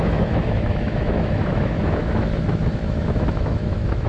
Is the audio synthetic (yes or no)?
yes